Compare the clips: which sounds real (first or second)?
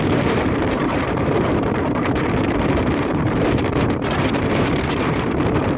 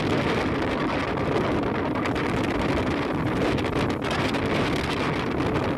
second